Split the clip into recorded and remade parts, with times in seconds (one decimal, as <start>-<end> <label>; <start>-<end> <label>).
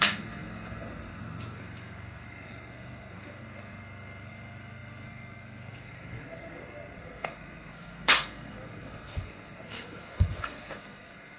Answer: 0.0-11.4 remade